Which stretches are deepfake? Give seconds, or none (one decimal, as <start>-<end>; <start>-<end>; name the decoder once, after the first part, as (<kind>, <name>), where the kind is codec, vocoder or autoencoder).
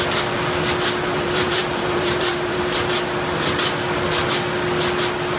1.1-2.6 (vocoder, BigVGAN v2)